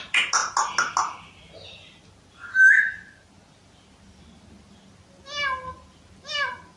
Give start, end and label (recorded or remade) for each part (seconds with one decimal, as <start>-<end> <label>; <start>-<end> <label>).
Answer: 0.0-6.8 recorded